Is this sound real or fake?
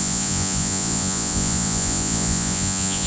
fake